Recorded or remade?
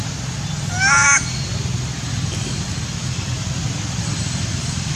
recorded